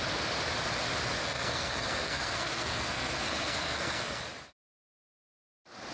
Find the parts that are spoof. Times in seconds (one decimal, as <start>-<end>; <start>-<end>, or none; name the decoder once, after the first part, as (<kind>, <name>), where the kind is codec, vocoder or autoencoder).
1.2-4.2 (codec, SNAC)

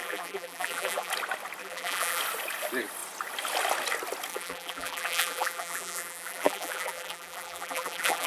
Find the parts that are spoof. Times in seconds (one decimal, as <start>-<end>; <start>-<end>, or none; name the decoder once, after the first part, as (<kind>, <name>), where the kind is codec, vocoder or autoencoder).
0.0-1.1 (vocoder, BigVGAN v2); 1.6-2.2; 4.3-8.3

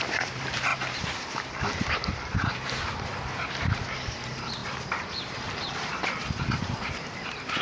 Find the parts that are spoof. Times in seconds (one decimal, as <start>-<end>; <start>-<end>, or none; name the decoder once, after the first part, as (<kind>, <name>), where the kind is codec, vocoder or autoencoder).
0.0-3.1 (vocoder, BigVGAN v2); 3.6-7.6